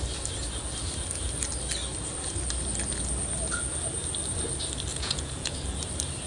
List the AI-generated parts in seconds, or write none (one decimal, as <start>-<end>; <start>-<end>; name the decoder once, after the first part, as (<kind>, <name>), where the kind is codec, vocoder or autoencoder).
4.9-5.5 (vocoder, Vocos)